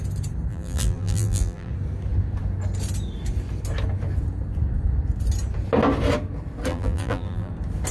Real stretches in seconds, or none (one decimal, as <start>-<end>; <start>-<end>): 0.0-0.5; 1.7-6.7; 7.5-7.9